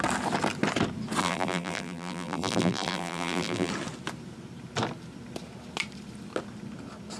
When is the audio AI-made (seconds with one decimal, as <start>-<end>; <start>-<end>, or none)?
1.2-3.7